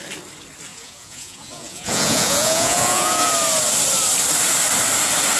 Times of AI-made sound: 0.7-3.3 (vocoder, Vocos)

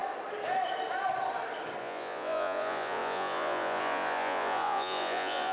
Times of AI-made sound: 1.8-5.5 (vocoder, Vocos)

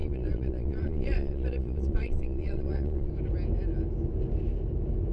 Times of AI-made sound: 0.0-3.1 (vocoder, Vocos)

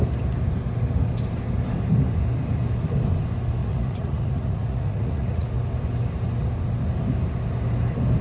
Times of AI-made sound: 3.6-5.5 (vocoder, Vocos)